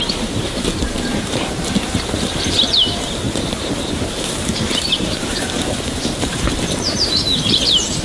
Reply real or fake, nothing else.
fake